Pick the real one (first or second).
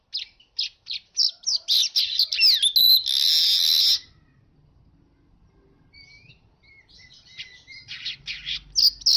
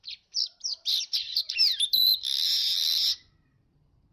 first